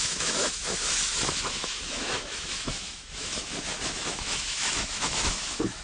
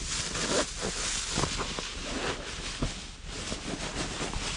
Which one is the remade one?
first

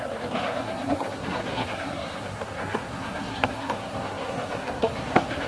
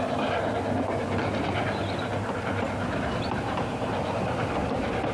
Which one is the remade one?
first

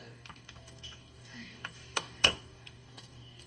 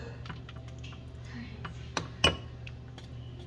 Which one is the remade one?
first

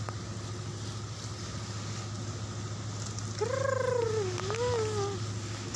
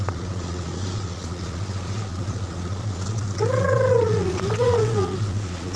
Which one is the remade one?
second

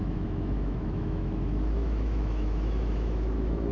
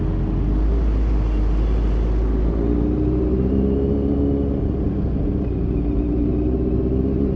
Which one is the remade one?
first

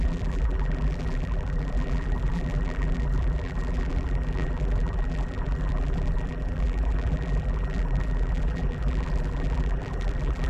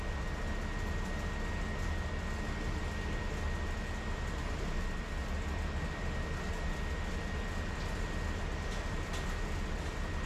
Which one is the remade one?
first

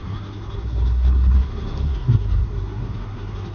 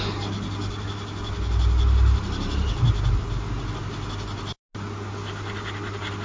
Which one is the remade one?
first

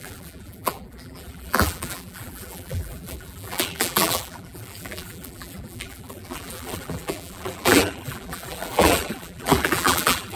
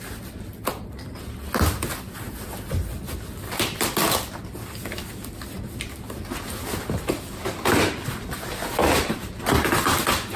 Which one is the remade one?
first